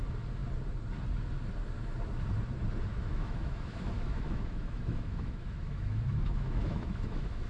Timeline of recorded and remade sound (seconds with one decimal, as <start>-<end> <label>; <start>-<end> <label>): 0.0-2.9 recorded; 2.9-7.5 remade